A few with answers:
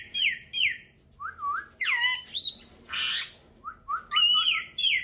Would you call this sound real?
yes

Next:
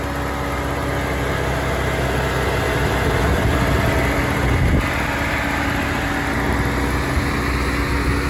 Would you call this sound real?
yes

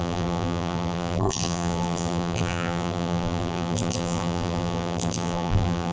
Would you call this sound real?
no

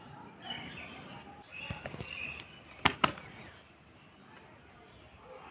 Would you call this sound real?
yes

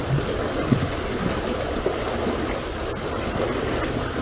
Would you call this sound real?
yes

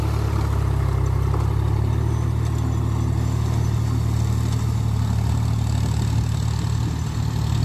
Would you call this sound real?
yes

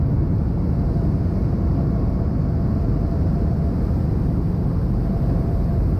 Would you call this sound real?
no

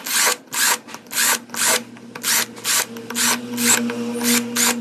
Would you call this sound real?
yes